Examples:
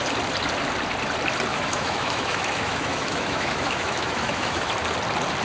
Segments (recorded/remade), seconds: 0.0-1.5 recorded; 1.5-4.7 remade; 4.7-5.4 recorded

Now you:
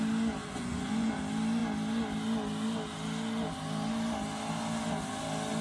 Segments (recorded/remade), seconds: 0.0-0.4 recorded; 0.4-1.1 remade; 1.1-5.6 recorded

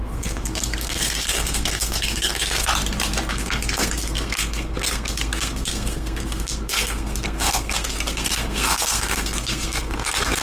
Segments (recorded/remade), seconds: 0.0-2.7 remade; 2.7-3.3 recorded; 3.3-10.4 remade

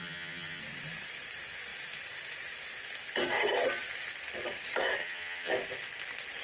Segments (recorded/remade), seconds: 0.0-0.6 remade; 0.6-5.0 recorded; 5.0-5.5 remade; 5.5-6.4 recorded

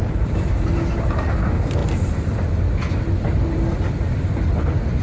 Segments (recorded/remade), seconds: 0.0-5.0 recorded

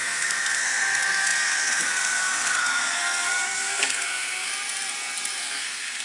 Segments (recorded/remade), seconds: 0.0-4.5 remade; 4.5-5.4 recorded; 5.4-6.0 remade

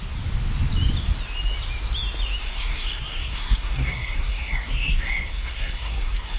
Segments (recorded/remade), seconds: 0.0-2.4 recorded; 2.4-6.4 remade